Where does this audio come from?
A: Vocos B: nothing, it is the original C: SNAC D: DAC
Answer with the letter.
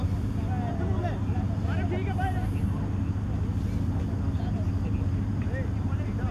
B